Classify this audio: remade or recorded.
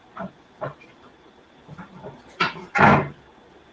remade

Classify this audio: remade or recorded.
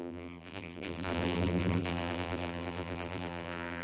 remade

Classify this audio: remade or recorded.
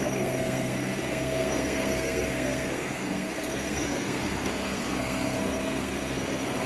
remade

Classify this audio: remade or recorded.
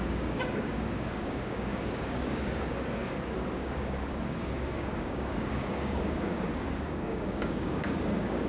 remade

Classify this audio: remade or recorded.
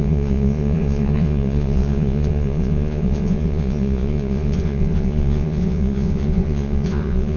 remade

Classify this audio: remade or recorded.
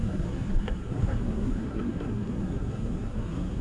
remade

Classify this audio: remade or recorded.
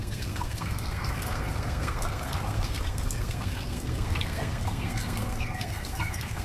remade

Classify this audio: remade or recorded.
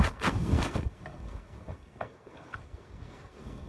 remade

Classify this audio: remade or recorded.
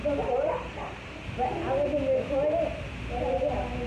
recorded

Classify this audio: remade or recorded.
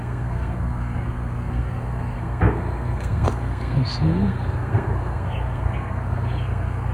remade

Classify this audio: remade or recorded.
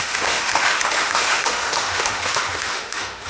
remade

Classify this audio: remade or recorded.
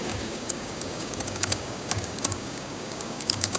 remade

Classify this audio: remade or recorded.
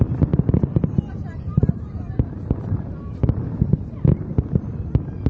remade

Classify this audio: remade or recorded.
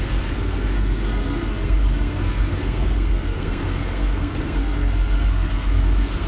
remade